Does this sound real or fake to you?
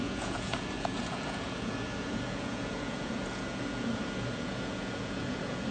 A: fake